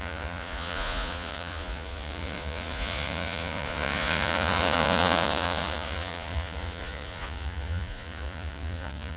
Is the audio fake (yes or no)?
yes